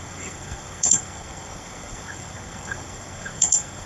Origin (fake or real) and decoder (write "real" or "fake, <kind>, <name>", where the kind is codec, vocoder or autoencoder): fake, codec, SNAC